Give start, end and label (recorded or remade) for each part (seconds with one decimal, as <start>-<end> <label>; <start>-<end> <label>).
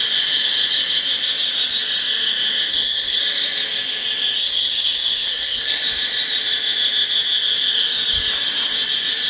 0.0-2.7 recorded; 2.7-3.2 remade; 3.2-4.4 recorded; 4.4-5.8 remade; 5.8-9.3 recorded